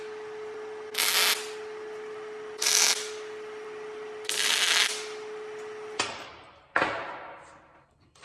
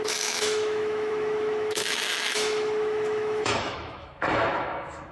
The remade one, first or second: second